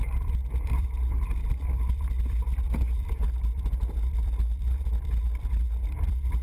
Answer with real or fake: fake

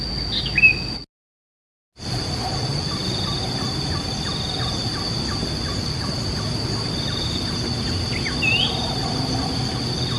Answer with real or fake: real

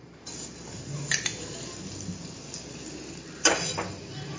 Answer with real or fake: fake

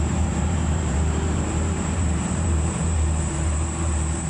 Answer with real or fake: fake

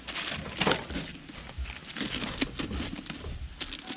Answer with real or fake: real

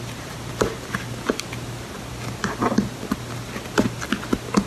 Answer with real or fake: real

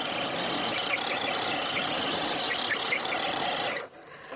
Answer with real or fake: real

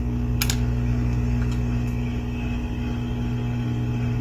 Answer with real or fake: real